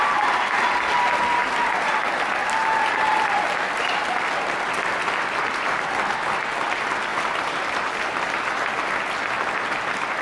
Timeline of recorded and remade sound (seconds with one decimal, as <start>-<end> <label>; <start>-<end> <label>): 0.0-7.1 recorded; 7.1-10.2 remade